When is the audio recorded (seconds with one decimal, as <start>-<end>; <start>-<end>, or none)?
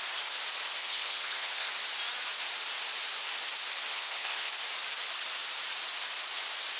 0.0-0.8; 1.7-3.9; 4.5-6.8